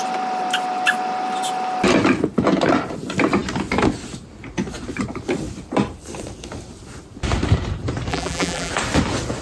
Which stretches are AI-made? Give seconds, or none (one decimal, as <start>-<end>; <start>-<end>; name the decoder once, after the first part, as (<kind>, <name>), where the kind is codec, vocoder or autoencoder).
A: 8.1-8.7 (vocoder, BigVGAN v2)